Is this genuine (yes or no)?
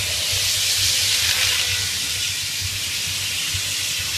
yes